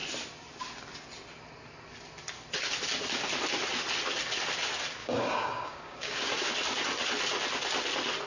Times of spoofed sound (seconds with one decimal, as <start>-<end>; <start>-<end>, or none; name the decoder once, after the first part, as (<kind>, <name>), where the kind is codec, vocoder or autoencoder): 5.0-6.5 (codec, DAC)